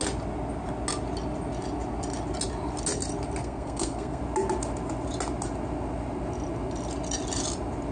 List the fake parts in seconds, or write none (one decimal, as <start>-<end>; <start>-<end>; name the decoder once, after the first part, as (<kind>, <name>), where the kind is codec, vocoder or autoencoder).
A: 3.4-4.2 (codec, SNAC)